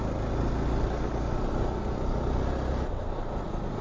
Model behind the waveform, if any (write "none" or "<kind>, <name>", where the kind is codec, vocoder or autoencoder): none